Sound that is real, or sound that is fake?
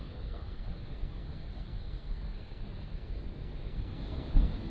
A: fake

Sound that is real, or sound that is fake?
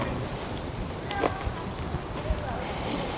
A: real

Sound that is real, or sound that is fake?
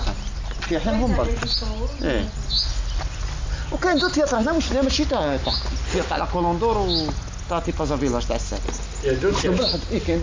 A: real